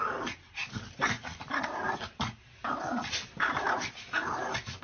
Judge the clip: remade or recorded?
recorded